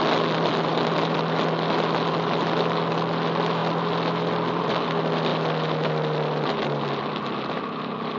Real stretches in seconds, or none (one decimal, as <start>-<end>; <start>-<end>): 0.0-8.2